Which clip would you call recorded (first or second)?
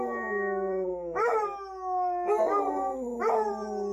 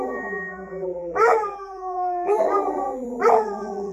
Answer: first